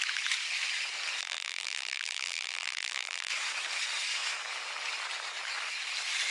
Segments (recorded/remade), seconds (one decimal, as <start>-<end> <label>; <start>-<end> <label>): 0.0-1.2 recorded; 1.2-3.3 remade; 3.3-6.3 recorded